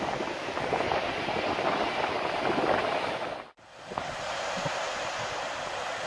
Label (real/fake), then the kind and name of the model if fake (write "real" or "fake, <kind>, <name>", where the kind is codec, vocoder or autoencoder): real